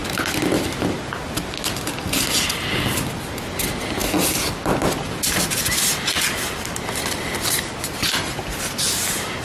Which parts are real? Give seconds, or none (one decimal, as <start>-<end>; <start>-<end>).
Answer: 0.0-9.4